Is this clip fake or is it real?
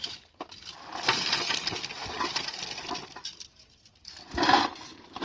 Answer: real